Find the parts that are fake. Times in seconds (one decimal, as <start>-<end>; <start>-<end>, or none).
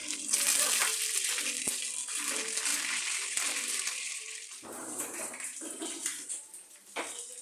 2.7-7.0